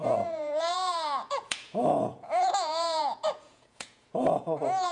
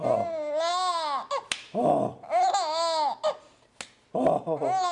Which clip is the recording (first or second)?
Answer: second